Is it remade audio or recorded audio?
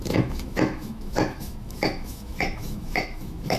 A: remade